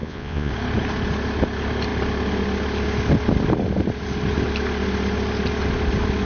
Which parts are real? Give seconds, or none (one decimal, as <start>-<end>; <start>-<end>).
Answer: 0.5-6.3